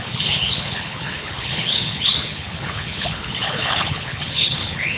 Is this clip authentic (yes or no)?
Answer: no